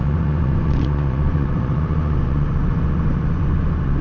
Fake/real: fake